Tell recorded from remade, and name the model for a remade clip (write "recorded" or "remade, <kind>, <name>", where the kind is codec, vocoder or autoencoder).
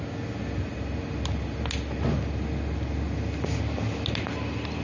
recorded